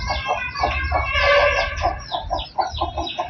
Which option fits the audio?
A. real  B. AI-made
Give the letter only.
B